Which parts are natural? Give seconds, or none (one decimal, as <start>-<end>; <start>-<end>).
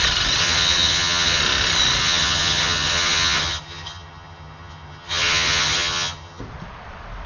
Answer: 0.0-0.4; 1.4-2.0; 6.4-7.3